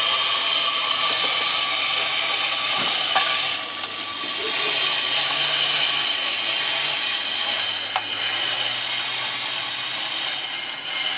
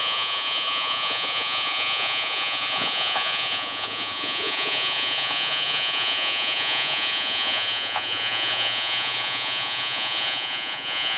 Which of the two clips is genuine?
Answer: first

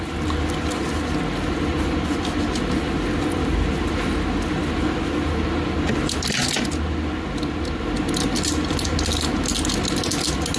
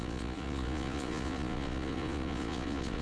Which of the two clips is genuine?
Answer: first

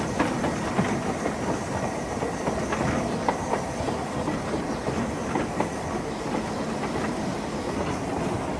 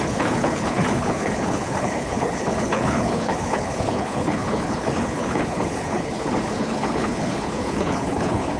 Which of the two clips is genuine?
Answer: first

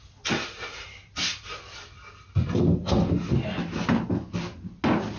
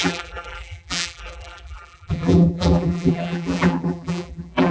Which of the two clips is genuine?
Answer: first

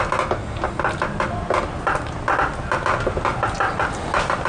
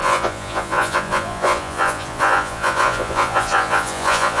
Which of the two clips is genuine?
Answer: first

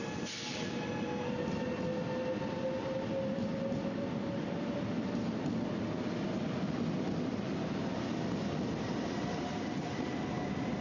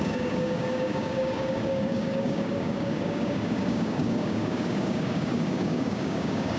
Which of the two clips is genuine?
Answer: first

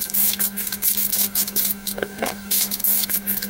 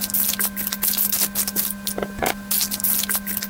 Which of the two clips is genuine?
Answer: second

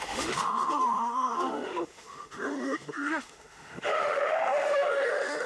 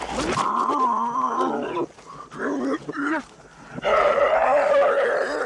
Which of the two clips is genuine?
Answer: second